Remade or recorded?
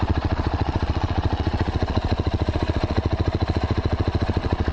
remade